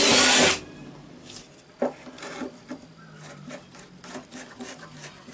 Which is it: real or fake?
real